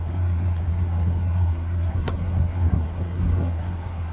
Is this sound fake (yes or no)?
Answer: yes